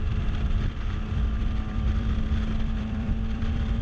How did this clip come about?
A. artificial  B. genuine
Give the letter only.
A